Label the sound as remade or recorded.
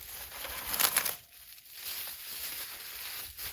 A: recorded